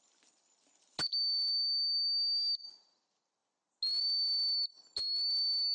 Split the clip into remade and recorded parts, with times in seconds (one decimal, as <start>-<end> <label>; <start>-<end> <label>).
0.0-5.7 recorded